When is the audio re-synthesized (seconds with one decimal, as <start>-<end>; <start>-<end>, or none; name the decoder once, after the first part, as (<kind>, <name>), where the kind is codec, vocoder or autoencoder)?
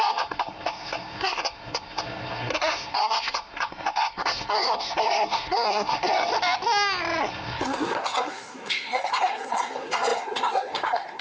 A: 0.0-6.3 (codec, SNAC); 7.2-11.2